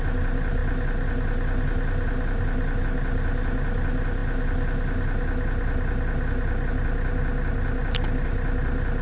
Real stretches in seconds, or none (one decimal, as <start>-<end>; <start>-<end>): 0.0-9.0